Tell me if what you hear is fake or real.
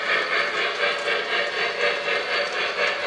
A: real